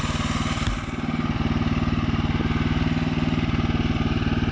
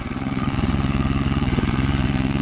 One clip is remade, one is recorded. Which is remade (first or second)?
second